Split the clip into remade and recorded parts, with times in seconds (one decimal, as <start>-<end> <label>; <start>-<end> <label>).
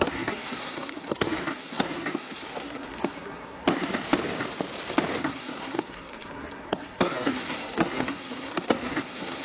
0.0-3.9 remade; 3.9-5.2 recorded; 5.2-9.4 remade